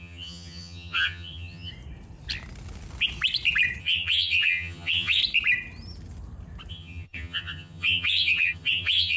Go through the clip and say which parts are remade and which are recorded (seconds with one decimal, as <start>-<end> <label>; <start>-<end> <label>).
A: 0.0-1.7 remade; 1.7-3.8 recorded; 3.8-5.2 remade; 5.2-6.7 recorded; 6.7-9.2 remade